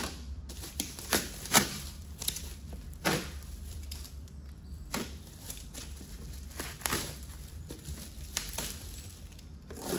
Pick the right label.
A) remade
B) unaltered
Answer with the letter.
A